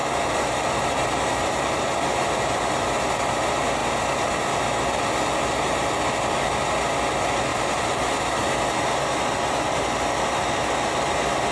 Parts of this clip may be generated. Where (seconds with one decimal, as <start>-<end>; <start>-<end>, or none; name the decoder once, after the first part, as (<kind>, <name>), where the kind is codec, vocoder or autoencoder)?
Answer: 0.0-2.6 (vocoder, BigVGAN v2)